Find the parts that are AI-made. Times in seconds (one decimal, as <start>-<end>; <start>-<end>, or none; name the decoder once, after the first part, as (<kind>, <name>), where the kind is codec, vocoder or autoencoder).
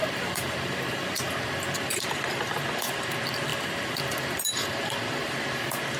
0.0-6.0 (vocoder, BigVGAN v2)